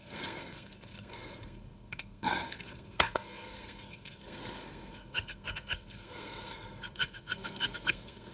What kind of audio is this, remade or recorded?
remade